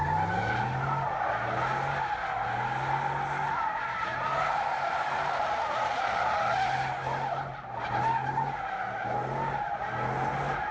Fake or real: real